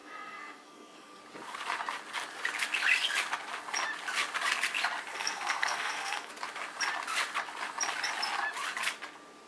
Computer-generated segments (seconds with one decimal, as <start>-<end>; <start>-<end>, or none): 0.0-1.2; 5.1-6.3